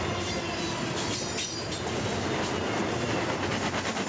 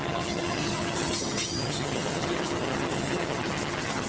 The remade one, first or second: second